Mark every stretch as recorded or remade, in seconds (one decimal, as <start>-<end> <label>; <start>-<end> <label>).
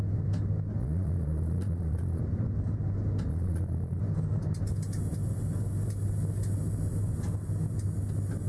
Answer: 0.0-0.8 recorded; 0.8-2.2 remade; 2.2-3.3 recorded; 3.3-4.0 remade; 4.0-8.5 recorded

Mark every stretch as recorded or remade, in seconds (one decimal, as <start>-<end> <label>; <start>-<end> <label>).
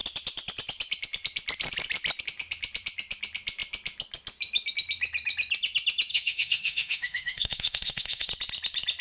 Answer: 0.0-6.1 recorded; 6.1-8.3 remade; 8.3-9.0 recorded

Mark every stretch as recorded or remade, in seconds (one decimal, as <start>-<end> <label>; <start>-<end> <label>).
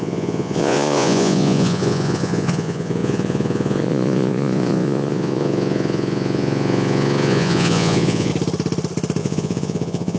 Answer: 0.0-8.3 remade; 8.3-9.2 recorded; 9.2-10.2 remade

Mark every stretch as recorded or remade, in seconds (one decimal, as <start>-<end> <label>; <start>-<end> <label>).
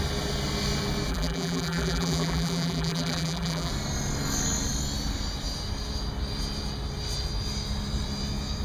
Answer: 0.0-1.1 recorded; 1.1-3.7 remade; 3.7-8.6 recorded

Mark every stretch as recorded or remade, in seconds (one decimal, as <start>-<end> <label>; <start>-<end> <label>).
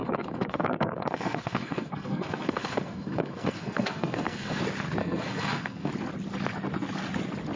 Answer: 0.0-4.6 remade; 4.6-5.0 recorded; 5.0-5.9 remade; 5.9-7.6 recorded